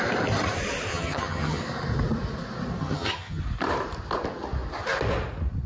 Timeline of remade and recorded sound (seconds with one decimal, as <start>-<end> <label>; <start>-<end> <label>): 0.0-0.9 recorded; 0.9-1.6 remade; 1.6-2.8 recorded; 2.8-3.4 remade; 3.4-5.7 recorded